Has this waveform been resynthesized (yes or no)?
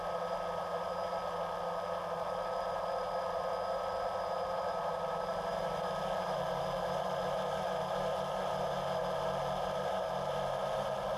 no